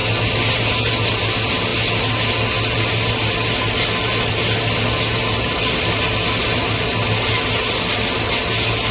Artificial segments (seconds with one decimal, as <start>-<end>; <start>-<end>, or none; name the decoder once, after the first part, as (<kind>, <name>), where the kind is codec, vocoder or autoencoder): none